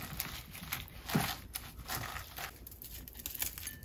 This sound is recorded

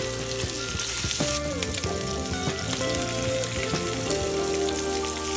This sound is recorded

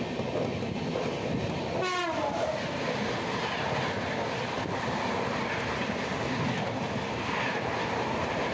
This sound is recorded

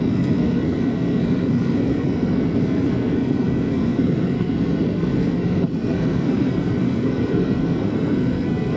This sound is remade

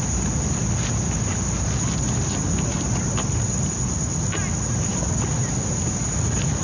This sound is recorded